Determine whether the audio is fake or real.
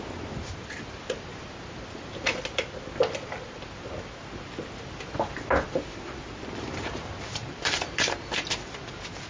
real